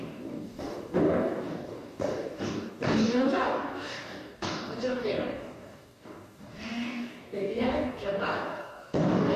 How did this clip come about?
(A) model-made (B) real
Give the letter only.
A